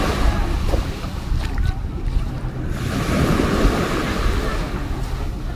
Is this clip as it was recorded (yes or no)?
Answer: yes